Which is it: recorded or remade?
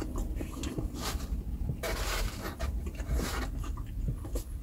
recorded